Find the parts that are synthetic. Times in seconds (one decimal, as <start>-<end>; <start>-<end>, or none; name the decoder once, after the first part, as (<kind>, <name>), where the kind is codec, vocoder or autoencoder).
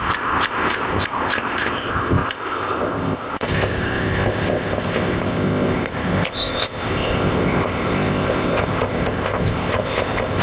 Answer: 0.0-10.4 (codec, ZipCodec)